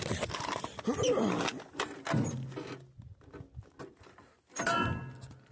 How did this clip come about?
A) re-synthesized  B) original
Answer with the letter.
B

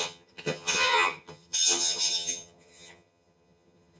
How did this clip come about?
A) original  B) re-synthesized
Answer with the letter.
B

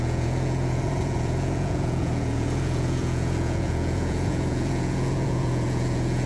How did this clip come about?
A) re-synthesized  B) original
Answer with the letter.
A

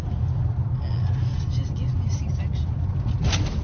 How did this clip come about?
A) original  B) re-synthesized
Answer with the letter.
A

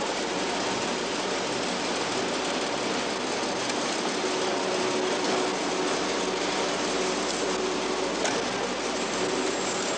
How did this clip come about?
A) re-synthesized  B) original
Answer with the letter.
B